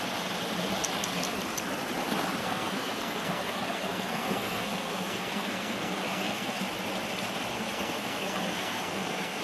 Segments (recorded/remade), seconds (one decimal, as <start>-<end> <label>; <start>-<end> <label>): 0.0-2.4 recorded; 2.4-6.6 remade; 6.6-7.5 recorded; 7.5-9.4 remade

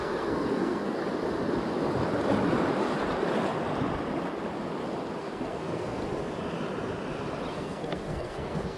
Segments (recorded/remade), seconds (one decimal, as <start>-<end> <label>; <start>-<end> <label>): 0.0-1.0 remade; 1.0-5.2 recorded; 5.2-6.0 remade; 6.0-7.5 recorded; 7.5-8.8 remade

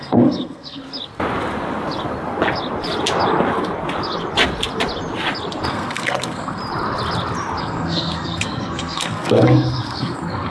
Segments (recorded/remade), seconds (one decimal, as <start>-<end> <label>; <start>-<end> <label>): 0.0-0.8 remade; 0.8-5.7 recorded; 5.7-6.6 remade; 6.6-7.6 recorded; 7.6-10.5 remade